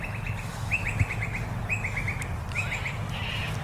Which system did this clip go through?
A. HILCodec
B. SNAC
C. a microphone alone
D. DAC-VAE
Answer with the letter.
C